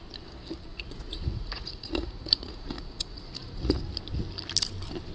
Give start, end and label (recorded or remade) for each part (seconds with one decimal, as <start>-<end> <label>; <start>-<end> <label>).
0.0-0.7 recorded; 0.7-3.8 remade; 3.8-5.1 recorded